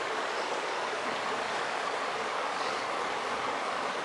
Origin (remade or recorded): remade